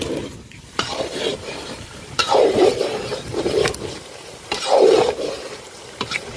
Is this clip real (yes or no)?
no